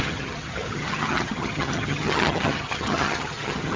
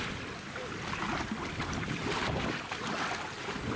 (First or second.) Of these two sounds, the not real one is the first